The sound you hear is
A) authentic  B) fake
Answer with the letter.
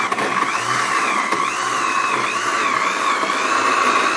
A